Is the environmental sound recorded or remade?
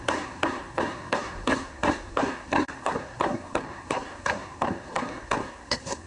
remade